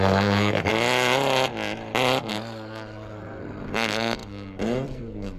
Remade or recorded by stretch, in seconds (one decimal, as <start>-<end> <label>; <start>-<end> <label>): 0.0-0.7 remade; 0.7-2.3 recorded; 2.3-5.4 remade